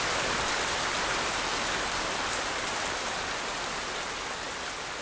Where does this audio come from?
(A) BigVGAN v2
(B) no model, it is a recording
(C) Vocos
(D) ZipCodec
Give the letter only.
B